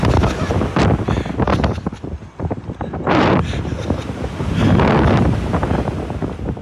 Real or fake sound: real